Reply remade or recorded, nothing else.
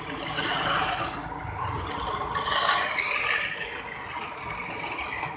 recorded